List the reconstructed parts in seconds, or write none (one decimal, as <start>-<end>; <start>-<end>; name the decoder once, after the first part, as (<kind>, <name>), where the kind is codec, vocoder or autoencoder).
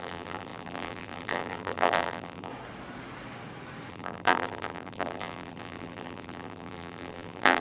0.0-2.5 (vocoder, BigVGAN v2); 3.9-7.6